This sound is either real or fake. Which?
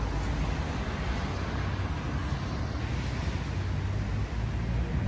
real